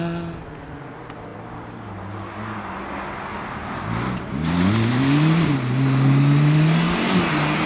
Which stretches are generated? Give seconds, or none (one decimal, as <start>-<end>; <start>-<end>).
none